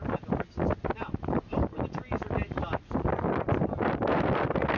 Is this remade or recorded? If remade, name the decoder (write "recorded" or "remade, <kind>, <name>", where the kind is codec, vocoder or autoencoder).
recorded